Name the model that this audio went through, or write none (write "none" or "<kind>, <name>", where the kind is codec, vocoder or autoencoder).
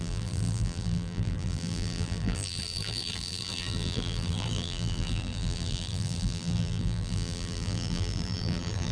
vocoder, BigVGAN v2